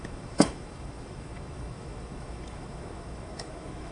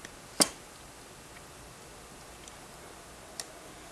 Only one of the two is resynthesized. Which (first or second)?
first